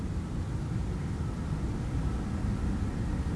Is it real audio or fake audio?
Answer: real